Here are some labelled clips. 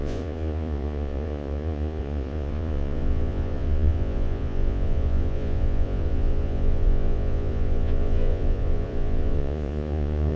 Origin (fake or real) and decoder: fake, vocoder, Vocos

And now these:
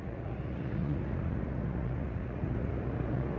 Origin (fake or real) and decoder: fake, vocoder, Vocos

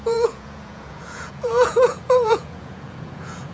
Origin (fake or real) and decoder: fake, vocoder, Vocos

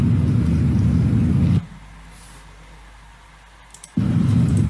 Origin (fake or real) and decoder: real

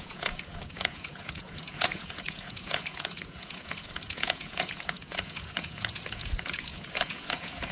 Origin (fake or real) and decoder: fake, vocoder, Vocos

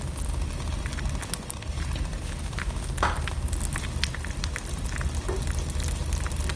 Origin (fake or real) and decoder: real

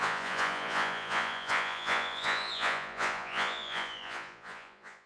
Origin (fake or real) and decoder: fake, vocoder, Vocos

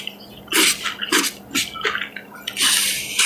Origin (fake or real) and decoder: real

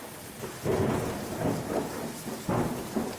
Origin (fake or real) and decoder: real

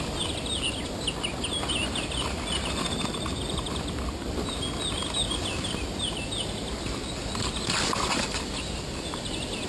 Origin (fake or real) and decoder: real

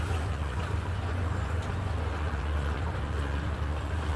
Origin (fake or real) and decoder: fake, vocoder, Vocos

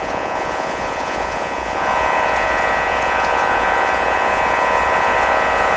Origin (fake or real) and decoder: fake, vocoder, Vocos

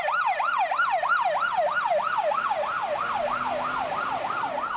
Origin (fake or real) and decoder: real